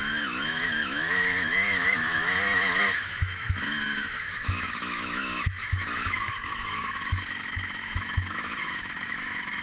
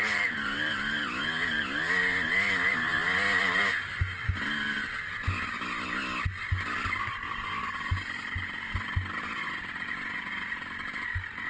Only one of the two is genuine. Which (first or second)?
second